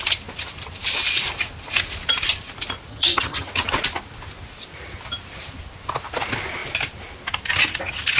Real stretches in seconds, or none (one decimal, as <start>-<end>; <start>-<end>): 0.0-2.9; 3.5-8.2